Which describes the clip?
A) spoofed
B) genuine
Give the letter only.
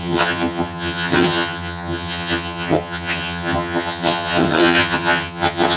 A